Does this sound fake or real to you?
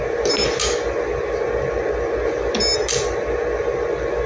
real